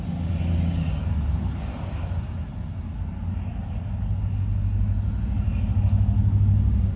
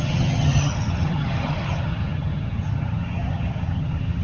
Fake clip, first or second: second